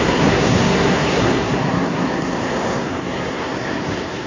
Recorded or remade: remade